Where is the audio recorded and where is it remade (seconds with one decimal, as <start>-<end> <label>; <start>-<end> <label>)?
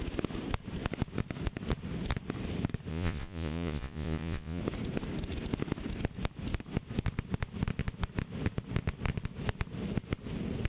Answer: 0.0-2.9 recorded; 2.9-4.6 remade; 4.6-10.7 recorded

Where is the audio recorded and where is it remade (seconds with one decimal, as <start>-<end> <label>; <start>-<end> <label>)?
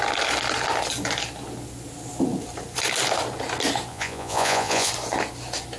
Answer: 0.0-3.9 recorded; 3.9-4.9 remade; 4.9-5.8 recorded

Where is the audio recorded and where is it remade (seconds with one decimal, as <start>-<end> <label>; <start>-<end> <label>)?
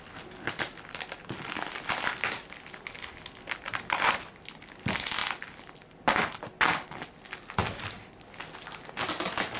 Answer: 0.0-9.6 recorded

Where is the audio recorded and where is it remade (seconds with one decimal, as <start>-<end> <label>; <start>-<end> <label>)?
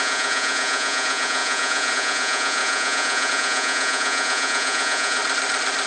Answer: 0.0-5.2 remade; 5.2-5.9 recorded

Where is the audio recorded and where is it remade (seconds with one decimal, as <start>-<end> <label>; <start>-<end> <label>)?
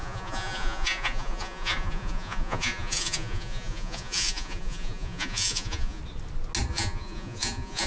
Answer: 0.0-6.0 remade; 6.0-6.7 recorded; 6.7-7.9 remade